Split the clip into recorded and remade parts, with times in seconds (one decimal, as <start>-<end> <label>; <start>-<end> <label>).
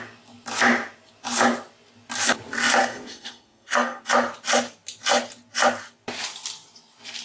0.0-2.8 recorded; 2.8-4.0 remade; 4.0-7.2 recorded